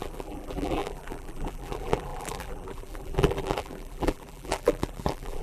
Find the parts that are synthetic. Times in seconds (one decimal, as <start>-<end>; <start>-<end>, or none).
0.0-5.4